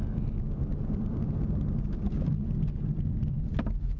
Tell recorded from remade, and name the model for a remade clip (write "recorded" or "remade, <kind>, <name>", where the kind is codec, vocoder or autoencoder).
recorded